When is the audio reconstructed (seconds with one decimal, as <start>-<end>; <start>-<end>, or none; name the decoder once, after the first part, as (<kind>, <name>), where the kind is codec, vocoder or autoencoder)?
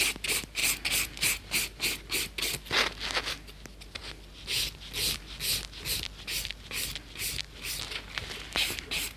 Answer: 8.5-9.2 (vocoder, BigVGAN v2)